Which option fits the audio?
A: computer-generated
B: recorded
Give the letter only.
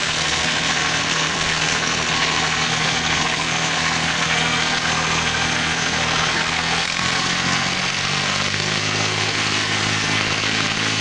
A